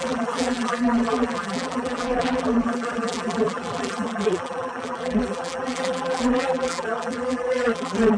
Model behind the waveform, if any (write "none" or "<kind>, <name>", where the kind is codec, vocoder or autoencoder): vocoder, BigVGAN v2